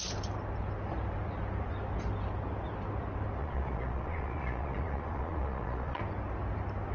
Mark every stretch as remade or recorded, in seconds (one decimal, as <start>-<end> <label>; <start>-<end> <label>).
0.0-3.4 recorded; 3.4-6.0 remade; 6.0-6.9 recorded